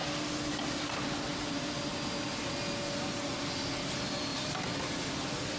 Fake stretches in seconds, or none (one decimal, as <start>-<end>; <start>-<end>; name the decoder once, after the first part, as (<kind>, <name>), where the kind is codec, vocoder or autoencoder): none